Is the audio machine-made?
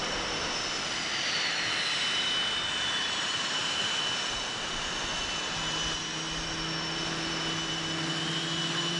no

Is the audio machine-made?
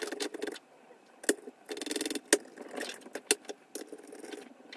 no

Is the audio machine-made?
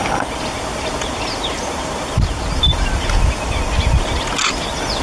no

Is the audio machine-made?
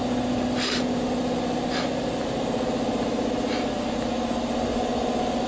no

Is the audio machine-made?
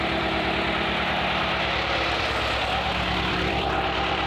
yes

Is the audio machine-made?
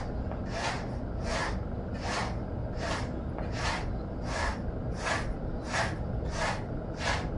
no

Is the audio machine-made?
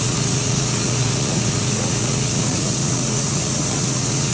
yes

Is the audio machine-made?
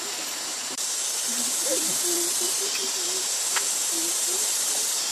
yes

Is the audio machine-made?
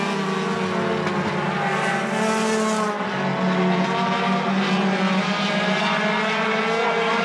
no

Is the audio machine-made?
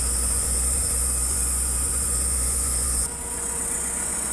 yes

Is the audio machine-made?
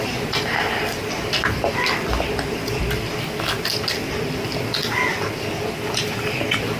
no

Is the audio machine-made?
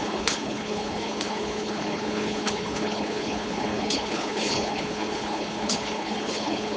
yes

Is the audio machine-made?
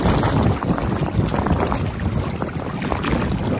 no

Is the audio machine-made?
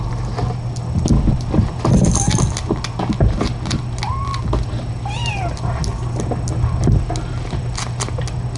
no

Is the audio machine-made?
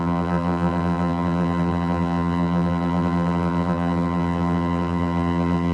yes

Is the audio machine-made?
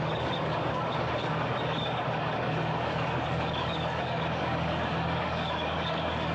yes